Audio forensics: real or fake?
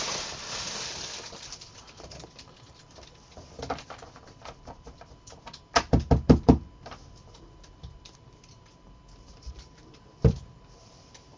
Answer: fake